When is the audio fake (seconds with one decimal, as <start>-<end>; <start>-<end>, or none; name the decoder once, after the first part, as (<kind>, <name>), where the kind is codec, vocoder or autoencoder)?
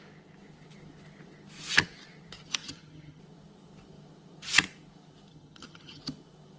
2.6-3.2 (vocoder, HiFi-GAN); 5.3-6.0